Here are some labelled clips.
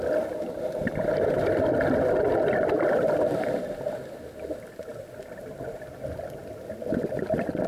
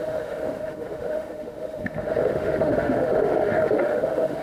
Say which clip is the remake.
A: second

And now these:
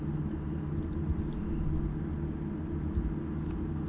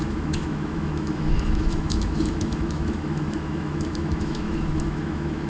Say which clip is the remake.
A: second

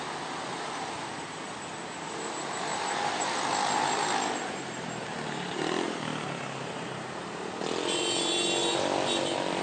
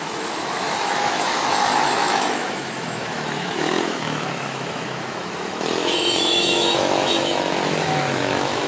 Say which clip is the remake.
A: second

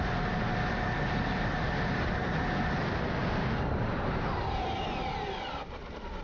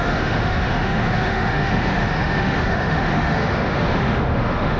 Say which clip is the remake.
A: second